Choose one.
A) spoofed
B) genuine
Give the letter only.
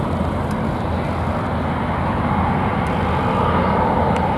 B